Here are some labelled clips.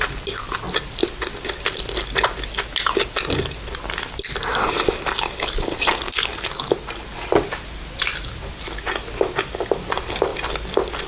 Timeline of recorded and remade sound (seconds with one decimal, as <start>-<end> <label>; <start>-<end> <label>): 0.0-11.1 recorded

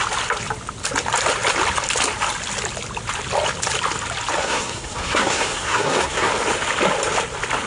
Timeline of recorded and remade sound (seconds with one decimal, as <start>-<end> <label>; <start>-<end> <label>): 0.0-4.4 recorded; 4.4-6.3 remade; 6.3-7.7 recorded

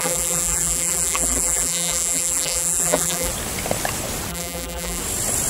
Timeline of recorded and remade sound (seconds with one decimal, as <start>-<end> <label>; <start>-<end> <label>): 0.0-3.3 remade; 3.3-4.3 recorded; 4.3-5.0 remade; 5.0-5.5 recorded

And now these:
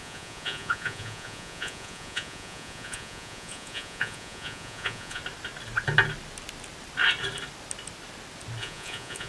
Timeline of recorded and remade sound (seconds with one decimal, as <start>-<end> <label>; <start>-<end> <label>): 0.0-5.2 remade; 5.2-8.6 recorded; 8.6-9.3 remade

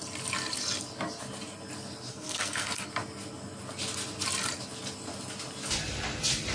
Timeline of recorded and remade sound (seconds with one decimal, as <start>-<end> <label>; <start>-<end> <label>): 0.0-2.1 recorded; 2.1-2.9 remade; 2.9-6.5 recorded